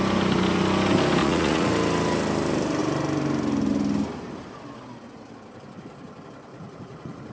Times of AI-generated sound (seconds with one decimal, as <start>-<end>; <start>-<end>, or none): 1.2-1.7; 6.5-7.3